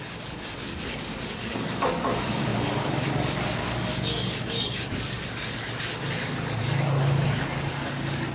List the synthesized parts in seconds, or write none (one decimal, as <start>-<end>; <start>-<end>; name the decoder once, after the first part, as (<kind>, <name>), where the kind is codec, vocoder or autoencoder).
0.0-8.3 (codec, DAC)